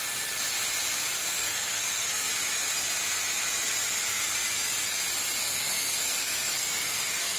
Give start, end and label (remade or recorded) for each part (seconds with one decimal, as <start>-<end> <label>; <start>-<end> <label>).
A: 0.0-1.2 recorded; 1.2-2.3 remade; 2.3-5.4 recorded; 5.4-7.4 remade